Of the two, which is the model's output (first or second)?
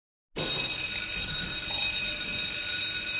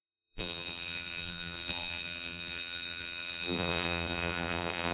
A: second